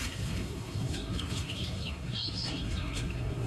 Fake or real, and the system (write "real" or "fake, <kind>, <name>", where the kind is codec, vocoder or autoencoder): fake, codec, SNAC